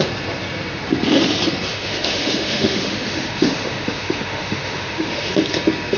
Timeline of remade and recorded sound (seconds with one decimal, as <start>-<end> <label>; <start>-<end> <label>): 0.0-1.7 recorded; 1.7-5.3 remade; 5.3-6.0 recorded